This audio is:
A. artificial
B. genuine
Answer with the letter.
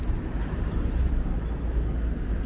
B